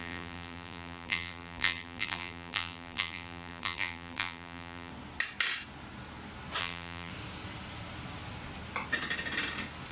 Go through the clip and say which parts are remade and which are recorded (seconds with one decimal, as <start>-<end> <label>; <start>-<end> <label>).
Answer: 0.0-4.9 remade; 4.9-6.6 recorded; 6.6-7.1 remade; 7.1-9.9 recorded